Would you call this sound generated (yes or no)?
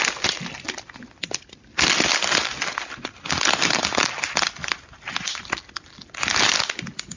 no